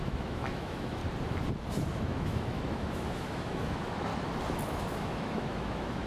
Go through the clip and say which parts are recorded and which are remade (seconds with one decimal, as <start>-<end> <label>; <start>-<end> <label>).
0.0-1.0 remade; 1.0-1.9 recorded; 1.9-4.1 remade; 4.1-4.7 recorded; 4.7-6.1 remade